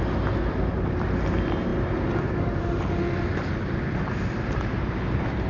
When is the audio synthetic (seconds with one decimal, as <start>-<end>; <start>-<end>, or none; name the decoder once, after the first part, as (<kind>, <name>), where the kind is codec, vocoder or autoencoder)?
none

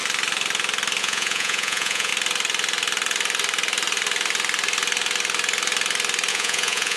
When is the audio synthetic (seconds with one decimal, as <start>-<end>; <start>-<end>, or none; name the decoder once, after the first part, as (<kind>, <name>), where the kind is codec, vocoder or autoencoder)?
1.0-2.1 (vocoder, Vocos); 6.3-7.0

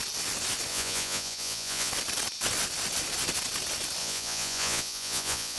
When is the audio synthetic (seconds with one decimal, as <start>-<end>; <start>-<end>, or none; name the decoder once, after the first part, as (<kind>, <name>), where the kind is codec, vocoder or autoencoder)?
0.7-1.9 (vocoder, Vocos); 4.0-5.6

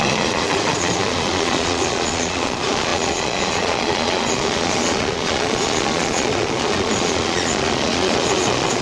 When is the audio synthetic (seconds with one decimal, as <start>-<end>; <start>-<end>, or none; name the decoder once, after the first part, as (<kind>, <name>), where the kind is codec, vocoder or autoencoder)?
0.0-8.8 (vocoder, Vocos)